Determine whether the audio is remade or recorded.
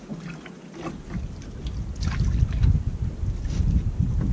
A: recorded